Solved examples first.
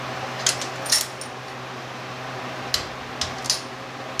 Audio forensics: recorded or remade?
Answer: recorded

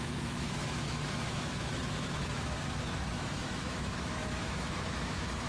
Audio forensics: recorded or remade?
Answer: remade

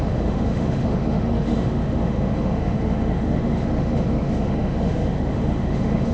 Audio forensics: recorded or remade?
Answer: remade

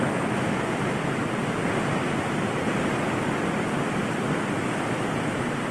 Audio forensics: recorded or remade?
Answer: recorded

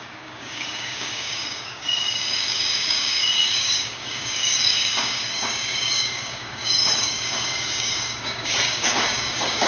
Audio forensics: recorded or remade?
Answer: remade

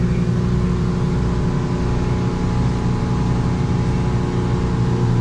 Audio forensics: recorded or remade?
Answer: recorded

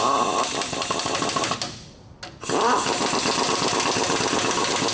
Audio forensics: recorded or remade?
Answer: recorded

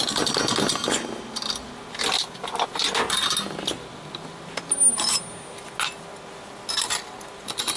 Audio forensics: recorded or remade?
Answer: recorded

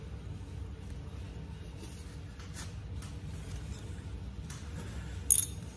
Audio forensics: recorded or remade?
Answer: recorded